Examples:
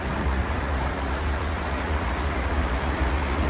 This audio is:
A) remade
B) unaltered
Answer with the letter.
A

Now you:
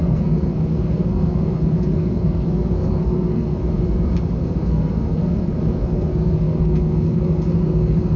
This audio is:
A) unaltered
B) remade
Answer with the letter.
B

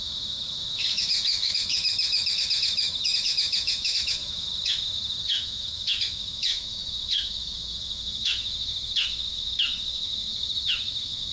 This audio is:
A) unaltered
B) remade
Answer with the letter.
B